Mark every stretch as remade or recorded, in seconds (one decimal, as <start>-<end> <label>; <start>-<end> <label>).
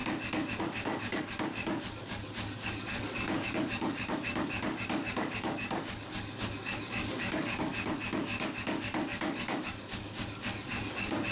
0.0-0.6 recorded; 0.6-11.3 remade